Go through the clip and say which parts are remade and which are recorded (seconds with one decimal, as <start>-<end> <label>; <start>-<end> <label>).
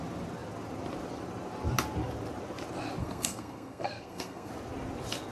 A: 0.0-3.0 recorded; 3.0-4.5 remade; 4.5-5.3 recorded